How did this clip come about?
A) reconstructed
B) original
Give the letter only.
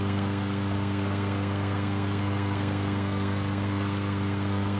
A